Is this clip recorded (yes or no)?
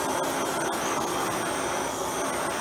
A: yes